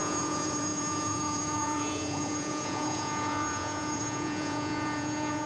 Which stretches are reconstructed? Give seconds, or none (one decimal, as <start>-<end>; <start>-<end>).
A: 0.0-5.5